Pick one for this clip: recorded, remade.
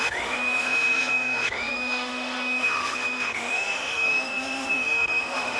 remade